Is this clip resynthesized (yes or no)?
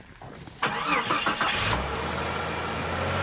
no